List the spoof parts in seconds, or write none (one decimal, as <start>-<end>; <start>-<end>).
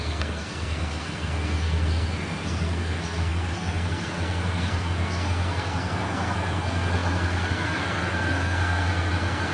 0.0-9.5